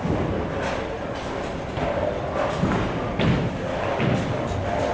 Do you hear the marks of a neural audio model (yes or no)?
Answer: no